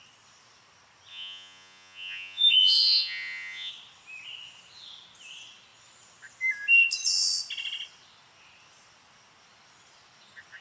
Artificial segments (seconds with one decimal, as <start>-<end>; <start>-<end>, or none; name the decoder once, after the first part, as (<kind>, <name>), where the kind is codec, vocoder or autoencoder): 1.1-3.7 (vocoder, Vocos)